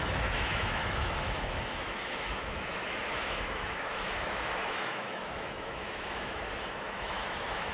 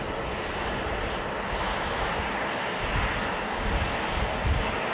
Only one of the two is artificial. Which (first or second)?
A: first